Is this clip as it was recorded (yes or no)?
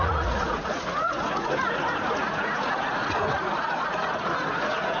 no